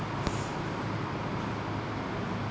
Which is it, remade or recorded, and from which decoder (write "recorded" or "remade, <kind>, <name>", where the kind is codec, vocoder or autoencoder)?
recorded